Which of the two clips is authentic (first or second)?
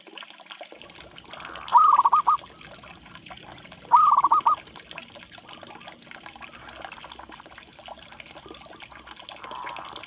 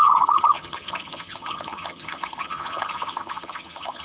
first